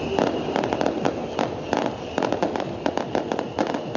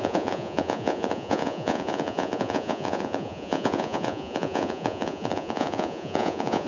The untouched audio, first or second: first